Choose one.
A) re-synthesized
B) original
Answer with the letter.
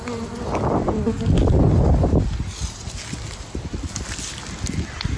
B